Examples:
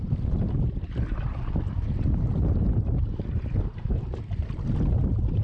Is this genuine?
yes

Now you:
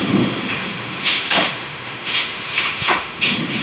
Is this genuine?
no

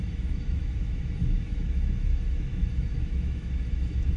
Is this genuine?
no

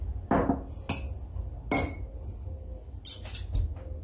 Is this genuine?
yes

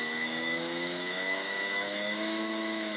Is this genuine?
no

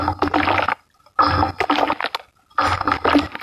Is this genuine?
yes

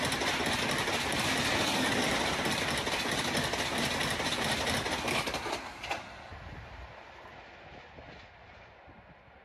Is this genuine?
yes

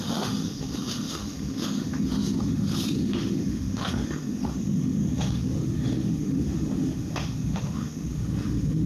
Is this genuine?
no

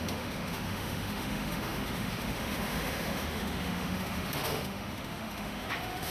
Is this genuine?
no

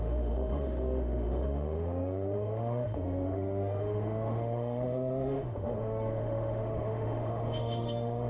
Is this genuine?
no